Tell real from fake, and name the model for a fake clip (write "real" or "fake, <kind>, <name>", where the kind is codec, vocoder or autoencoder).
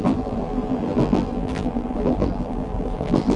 fake, vocoder, BigVGAN v2